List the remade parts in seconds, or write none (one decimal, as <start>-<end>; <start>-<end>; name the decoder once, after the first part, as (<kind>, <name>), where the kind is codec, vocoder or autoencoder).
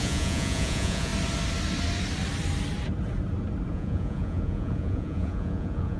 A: 0.0-1.1 (vocoder, Vocos); 3.7-6.0